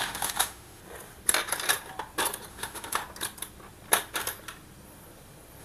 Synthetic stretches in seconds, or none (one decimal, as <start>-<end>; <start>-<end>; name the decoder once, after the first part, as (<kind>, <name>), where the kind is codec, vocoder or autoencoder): 0.0-0.8 (autoencoder, DAC-VAE); 2.5-3.0